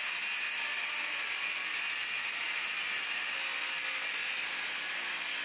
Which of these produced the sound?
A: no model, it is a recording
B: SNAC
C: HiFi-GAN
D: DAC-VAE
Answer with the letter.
A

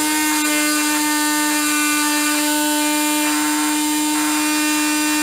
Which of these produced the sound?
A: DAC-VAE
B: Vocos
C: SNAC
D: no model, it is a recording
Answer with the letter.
D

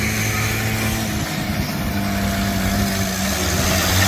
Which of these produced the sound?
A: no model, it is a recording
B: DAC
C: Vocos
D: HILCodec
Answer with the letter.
A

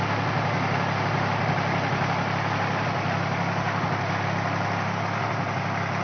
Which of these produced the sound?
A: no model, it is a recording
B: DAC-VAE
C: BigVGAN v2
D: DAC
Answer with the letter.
A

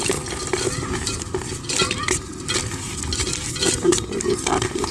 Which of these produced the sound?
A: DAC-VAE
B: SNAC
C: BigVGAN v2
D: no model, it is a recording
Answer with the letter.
D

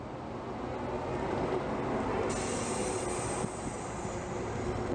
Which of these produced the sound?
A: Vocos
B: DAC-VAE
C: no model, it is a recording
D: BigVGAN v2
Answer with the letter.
C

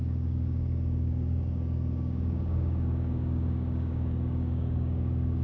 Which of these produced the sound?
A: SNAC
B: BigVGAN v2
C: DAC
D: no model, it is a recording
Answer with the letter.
C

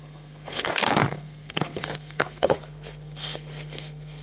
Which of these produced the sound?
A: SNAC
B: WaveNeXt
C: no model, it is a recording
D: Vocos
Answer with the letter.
A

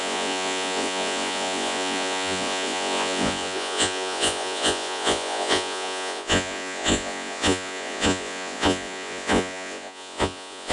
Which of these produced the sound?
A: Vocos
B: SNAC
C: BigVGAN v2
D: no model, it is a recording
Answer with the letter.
A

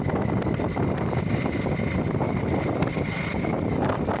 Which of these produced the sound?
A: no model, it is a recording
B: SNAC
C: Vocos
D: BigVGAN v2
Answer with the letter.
A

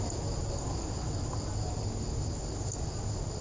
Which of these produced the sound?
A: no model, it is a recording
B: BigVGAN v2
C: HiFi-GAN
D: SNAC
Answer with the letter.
A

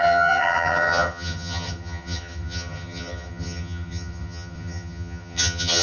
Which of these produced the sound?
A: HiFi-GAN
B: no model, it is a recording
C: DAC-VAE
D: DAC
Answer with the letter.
A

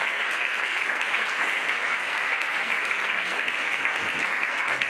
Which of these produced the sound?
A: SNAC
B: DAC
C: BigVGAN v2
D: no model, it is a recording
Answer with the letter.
A